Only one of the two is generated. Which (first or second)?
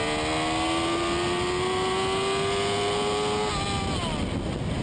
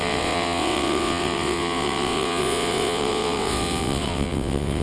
second